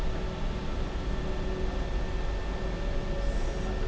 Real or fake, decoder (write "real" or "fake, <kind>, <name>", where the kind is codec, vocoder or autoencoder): real